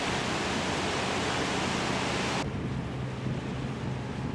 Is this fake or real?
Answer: real